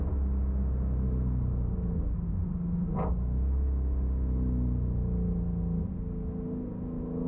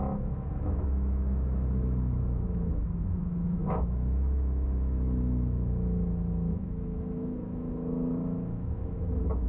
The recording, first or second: first